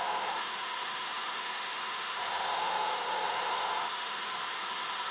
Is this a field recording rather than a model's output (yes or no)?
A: no